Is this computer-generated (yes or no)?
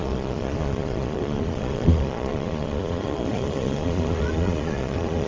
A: yes